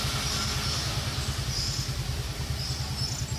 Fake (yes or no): no